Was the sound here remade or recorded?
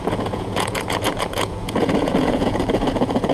remade